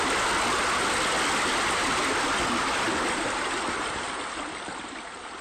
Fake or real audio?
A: real